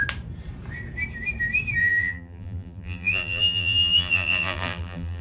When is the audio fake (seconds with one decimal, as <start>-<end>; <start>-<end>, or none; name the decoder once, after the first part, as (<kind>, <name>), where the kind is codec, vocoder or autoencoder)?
1.8-5.2 (vocoder, BigVGAN v2)